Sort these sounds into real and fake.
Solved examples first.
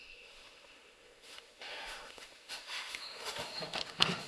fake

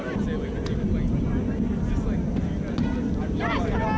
real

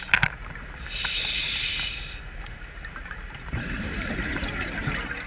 real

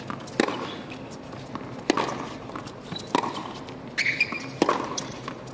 real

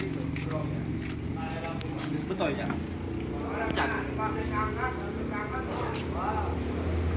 real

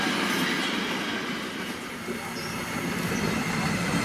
real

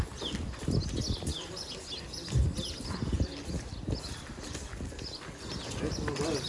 real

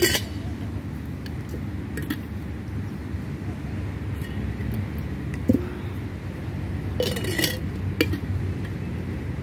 real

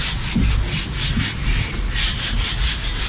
real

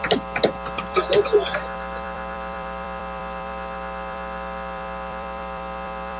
fake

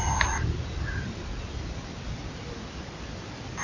real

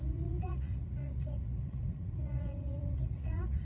fake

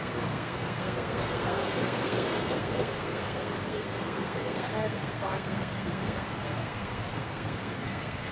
fake